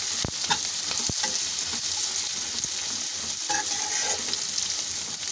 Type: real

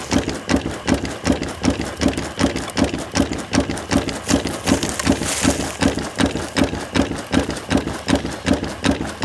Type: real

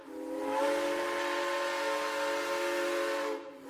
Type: real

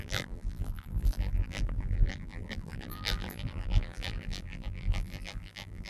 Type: fake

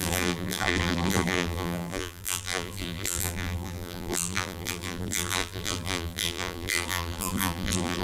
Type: fake